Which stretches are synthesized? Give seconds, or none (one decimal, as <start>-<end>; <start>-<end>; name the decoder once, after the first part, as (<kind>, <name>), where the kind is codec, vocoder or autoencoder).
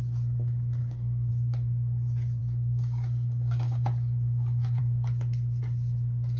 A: 0.8-1.3 (codec, DAC); 2.4-4.8